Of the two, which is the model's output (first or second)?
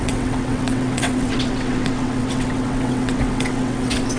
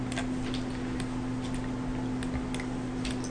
first